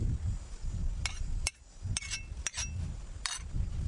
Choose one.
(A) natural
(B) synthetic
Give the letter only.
A